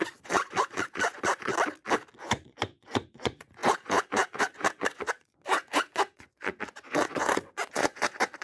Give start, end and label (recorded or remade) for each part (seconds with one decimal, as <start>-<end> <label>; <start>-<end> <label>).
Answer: 0.0-1.5 remade; 1.5-2.2 recorded; 2.2-8.4 remade